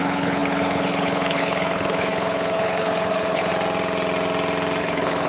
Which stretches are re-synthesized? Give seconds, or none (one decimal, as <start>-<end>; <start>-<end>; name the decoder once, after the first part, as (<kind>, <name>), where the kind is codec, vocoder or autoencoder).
0.0-3.5 (codec, HILCodec); 4.8-5.3